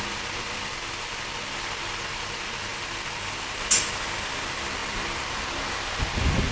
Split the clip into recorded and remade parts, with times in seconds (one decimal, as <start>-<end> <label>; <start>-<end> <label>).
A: 0.0-6.5 recorded